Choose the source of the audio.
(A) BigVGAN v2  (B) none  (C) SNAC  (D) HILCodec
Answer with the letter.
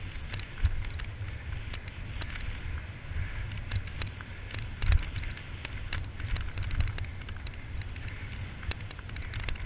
B